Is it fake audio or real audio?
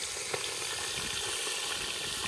real